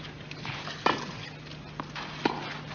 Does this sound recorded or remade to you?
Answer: recorded